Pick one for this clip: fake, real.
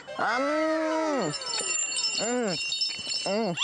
real